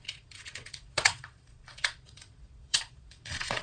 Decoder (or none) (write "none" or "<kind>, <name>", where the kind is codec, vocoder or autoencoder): vocoder, Vocos